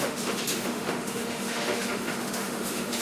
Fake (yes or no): yes